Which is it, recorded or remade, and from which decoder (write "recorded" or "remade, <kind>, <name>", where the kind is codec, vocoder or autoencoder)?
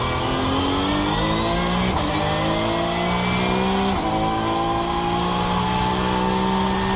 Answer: recorded